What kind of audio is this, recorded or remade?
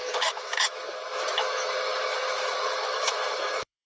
remade